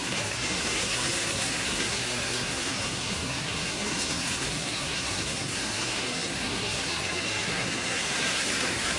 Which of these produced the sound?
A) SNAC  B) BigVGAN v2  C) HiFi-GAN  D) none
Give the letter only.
A